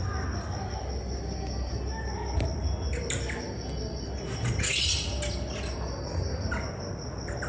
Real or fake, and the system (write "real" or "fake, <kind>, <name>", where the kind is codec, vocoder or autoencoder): real